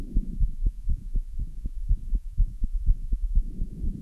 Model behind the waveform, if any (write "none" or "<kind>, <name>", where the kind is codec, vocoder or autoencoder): vocoder, Vocos